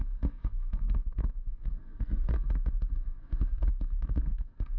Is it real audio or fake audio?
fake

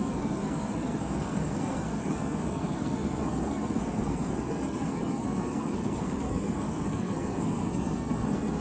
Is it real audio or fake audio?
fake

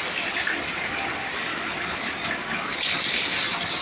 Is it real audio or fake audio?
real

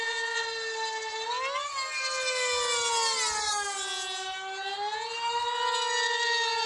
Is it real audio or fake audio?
real